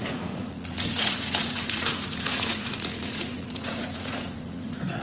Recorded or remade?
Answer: remade